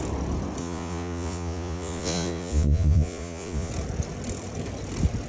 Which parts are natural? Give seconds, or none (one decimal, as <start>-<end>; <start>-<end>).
0.0-0.6; 3.7-5.3